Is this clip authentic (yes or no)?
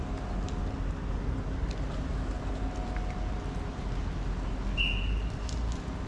yes